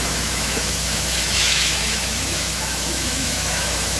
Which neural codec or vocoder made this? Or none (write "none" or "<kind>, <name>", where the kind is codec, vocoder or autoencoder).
autoencoder, DAC-VAE